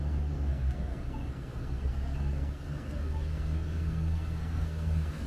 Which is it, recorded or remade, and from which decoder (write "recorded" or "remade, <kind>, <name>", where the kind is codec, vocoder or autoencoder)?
remade, codec, SNAC